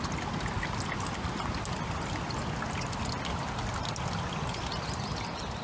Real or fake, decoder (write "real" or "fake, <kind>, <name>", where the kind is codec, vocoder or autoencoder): real